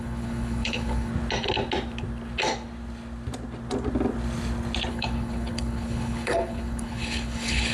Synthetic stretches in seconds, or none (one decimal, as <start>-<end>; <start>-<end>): 0.0-1.1; 4.9-7.7